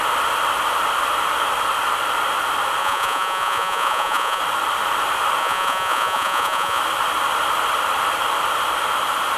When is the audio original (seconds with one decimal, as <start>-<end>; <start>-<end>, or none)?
0.0-2.8; 4.4-5.4; 6.8-9.4

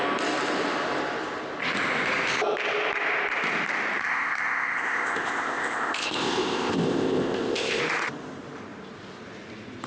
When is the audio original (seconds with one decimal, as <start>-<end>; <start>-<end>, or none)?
0.0-4.0; 7.8-9.9

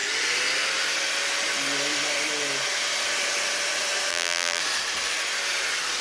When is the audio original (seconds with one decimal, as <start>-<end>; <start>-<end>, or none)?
0.0-4.1; 4.6-6.0

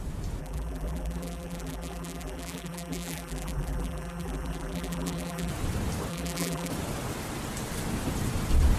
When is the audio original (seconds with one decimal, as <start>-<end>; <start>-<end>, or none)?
0.0-0.4; 5.5-6.1; 6.7-8.8

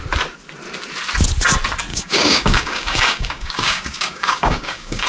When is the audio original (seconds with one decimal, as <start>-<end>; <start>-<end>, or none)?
0.0-1.9